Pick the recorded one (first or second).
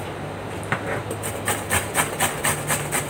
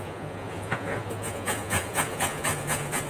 first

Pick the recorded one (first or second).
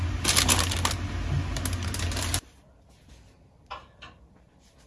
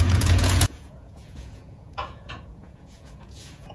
first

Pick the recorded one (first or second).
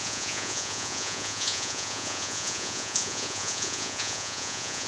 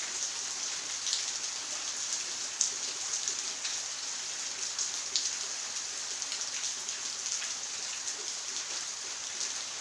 second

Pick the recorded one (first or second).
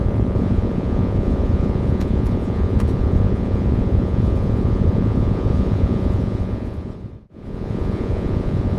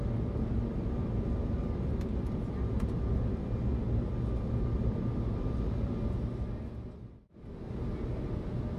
second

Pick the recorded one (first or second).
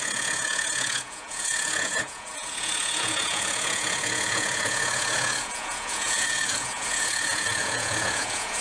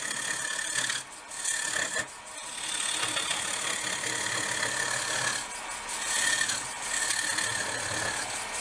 second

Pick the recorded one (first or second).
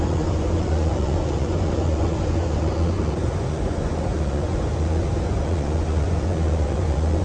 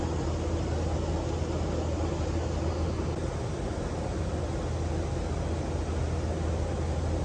second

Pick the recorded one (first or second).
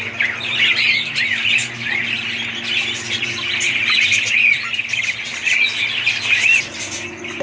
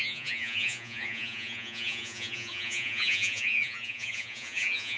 first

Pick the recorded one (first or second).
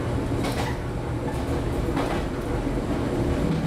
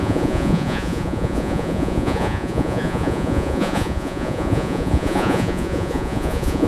first